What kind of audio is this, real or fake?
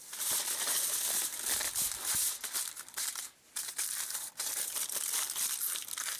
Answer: real